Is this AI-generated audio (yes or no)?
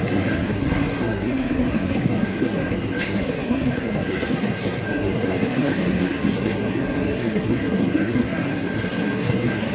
yes